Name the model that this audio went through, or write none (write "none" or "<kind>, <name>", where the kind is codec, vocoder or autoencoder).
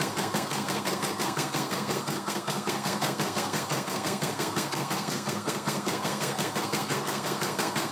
codec, SNAC